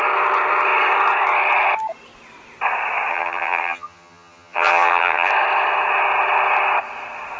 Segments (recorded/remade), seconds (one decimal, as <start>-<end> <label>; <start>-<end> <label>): 0.0-3.1 recorded; 3.1-5.3 remade; 5.3-7.4 recorded